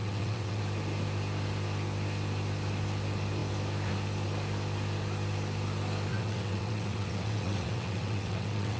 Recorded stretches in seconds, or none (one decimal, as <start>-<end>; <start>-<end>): 0.6-6.1